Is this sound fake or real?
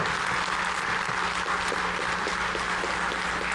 real